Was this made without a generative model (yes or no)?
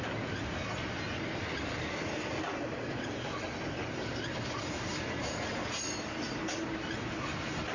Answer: yes